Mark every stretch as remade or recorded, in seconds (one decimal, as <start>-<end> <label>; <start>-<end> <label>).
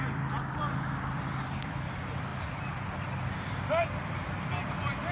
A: 0.0-2.3 recorded; 2.3-3.7 remade; 3.7-5.1 recorded